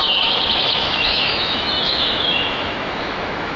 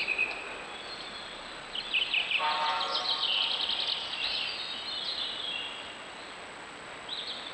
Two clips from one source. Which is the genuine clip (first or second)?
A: second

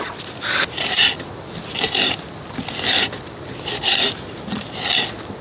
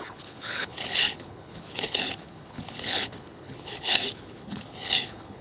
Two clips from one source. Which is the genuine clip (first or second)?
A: first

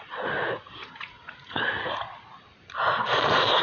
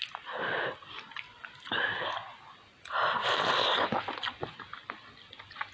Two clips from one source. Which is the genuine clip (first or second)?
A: second